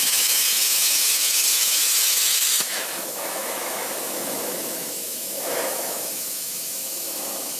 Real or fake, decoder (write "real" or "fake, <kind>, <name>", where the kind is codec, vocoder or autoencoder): fake, autoencoder, DAC-VAE